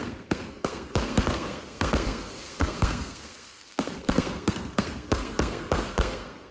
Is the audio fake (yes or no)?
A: yes